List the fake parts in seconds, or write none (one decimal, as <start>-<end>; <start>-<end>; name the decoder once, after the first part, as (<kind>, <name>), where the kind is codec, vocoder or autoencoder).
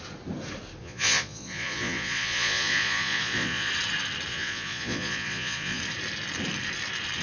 0.8-3.7 (vocoder, Vocos); 4.3-5.8